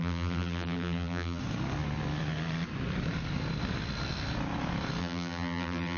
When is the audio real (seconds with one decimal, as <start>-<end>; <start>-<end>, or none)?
1.4-5.0